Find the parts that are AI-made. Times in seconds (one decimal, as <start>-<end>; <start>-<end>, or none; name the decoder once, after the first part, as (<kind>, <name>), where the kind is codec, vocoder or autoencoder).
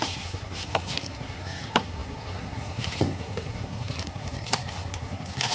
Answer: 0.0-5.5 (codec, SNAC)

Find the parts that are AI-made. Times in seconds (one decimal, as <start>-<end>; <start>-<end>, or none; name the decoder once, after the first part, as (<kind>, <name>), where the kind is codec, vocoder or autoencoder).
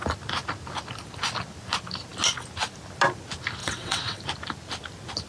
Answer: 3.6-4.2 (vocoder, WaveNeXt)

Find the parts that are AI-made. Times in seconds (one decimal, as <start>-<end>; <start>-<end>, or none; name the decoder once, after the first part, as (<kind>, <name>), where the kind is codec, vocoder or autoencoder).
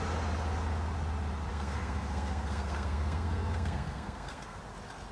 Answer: 1.5-4.6 (codec, SNAC)